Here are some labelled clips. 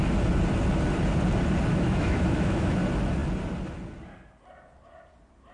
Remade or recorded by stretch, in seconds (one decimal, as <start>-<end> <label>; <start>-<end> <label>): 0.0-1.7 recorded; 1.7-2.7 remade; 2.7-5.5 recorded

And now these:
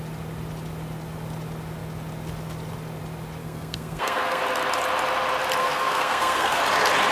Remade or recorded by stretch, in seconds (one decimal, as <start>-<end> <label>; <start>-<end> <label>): 0.0-3.4 recorded; 3.4-4.4 remade; 4.4-5.6 recorded; 5.6-6.6 remade; 6.6-7.1 recorded

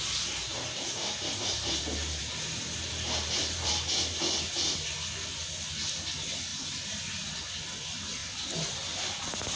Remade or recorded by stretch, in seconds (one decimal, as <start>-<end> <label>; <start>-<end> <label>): 0.0-0.5 recorded; 0.5-1.8 remade; 1.8-2.2 recorded; 2.2-3.7 remade; 3.7-6.5 recorded; 6.5-7.3 remade; 7.3-9.6 recorded